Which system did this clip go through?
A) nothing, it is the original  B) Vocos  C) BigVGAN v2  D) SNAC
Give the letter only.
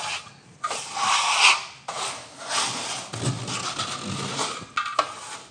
A